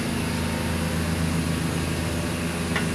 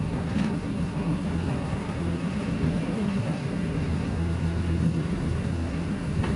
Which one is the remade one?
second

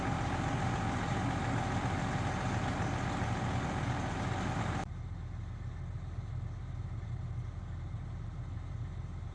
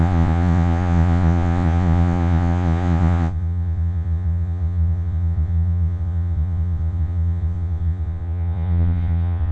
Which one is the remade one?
second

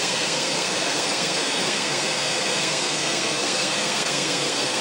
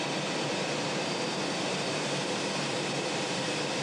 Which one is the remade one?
first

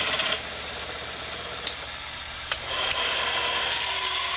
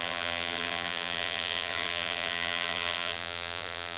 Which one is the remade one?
second